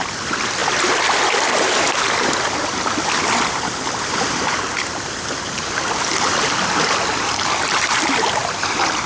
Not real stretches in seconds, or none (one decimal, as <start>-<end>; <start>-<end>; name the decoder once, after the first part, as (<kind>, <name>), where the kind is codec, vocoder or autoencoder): none